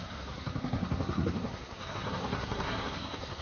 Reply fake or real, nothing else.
fake